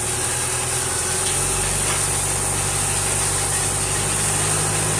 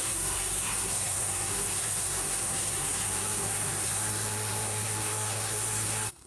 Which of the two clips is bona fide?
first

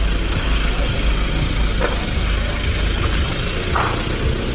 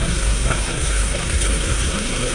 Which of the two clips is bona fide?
first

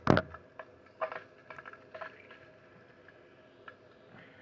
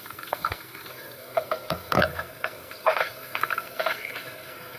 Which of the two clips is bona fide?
first